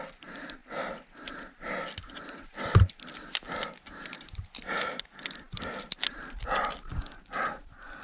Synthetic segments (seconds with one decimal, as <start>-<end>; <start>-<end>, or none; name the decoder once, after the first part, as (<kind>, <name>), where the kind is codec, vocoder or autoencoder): none